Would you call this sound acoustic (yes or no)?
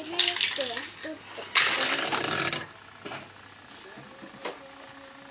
yes